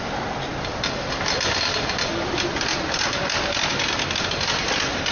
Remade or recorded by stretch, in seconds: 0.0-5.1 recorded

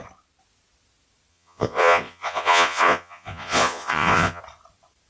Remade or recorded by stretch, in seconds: 0.0-1.3 recorded; 1.3-4.4 remade; 4.4-5.1 recorded

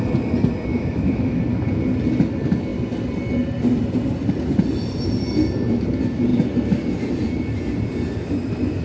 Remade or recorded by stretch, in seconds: 0.0-0.7 recorded; 0.7-1.4 remade; 1.4-8.8 recorded

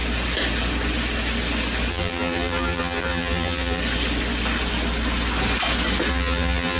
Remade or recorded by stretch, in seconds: 0.0-1.9 recorded; 1.9-3.8 remade; 3.8-6.1 recorded; 6.1-6.8 remade